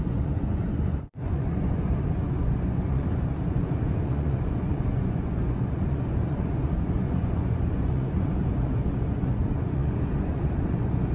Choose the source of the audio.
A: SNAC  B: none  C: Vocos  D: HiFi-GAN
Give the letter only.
C